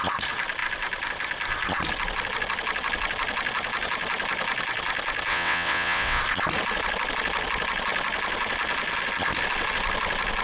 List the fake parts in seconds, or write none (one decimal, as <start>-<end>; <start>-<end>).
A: 5.3-6.2